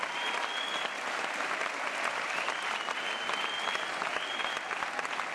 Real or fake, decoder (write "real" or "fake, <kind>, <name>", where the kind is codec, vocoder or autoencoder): real